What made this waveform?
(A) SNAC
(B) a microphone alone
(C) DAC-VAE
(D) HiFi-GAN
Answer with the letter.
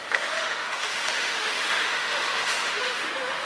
C